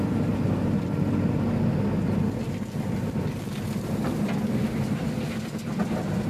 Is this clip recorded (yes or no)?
yes